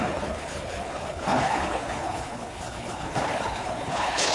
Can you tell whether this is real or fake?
fake